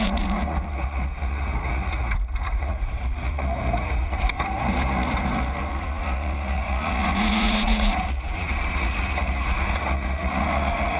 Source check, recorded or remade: remade